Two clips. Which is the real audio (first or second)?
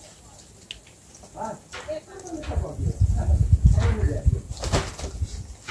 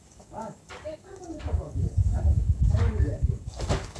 first